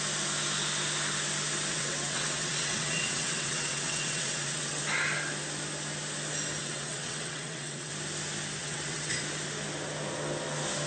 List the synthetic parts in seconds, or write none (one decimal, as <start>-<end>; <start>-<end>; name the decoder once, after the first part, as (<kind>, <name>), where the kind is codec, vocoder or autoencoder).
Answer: 1.7-4.8 (vocoder, WaveNeXt); 6.6-7.9; 8.6-9.1